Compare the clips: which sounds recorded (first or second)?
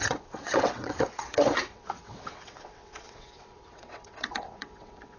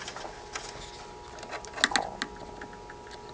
second